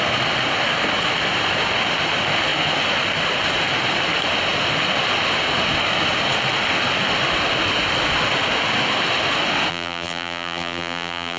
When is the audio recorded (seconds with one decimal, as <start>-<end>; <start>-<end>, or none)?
0.0-9.7